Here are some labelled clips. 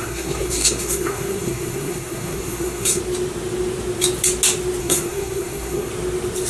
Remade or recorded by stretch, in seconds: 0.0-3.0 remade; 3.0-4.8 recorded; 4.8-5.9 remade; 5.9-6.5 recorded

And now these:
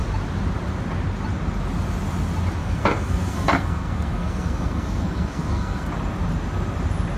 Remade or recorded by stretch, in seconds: 0.0-2.6 recorded; 2.6-5.9 remade; 5.9-7.2 recorded

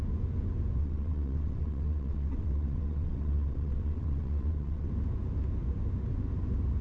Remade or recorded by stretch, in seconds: 0.0-0.8 recorded; 0.8-4.9 remade; 4.9-6.8 recorded

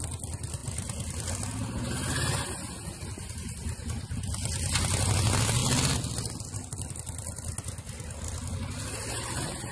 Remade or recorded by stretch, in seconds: 0.0-0.6 recorded; 0.6-1.3 remade; 1.3-9.7 recorded

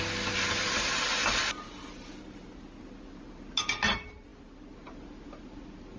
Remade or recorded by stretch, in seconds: 0.0-6.0 recorded

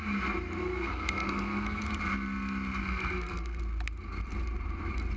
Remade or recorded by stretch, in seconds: 0.0-0.6 recorded; 0.6-1.8 remade; 1.8-2.8 recorded; 2.8-3.6 remade; 3.6-5.2 recorded

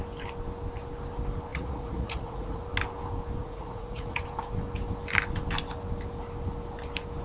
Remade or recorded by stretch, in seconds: 0.0-1.5 recorded; 1.5-2.6 remade; 2.6-3.4 recorded; 3.4-4.2 remade; 4.2-7.2 recorded